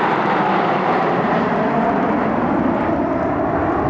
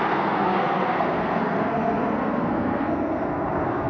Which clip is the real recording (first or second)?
first